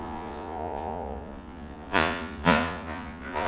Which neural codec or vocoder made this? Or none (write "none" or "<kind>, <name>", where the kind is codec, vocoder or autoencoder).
vocoder, Vocos